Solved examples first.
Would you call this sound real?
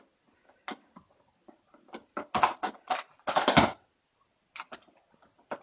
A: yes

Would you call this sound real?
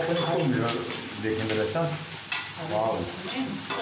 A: yes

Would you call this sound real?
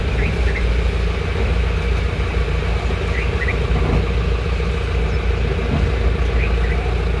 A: yes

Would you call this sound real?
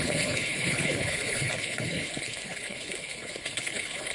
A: no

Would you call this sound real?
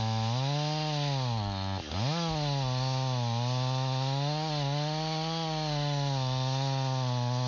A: yes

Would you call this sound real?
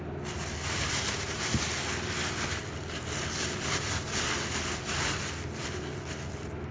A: yes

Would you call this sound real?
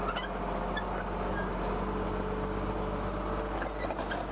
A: yes